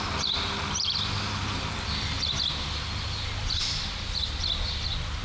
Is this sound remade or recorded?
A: recorded